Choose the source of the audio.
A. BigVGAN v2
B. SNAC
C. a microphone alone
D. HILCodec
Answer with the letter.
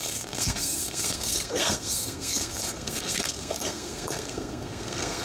B